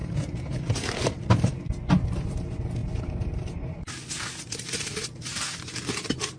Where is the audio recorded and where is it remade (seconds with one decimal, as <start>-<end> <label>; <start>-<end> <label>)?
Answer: 0.0-6.4 recorded